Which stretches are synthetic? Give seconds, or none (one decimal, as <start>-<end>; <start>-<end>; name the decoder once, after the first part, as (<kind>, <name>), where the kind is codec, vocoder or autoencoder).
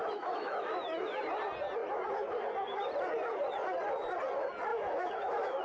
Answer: 0.0-1.2 (autoencoder, DAC-VAE); 4.7-5.6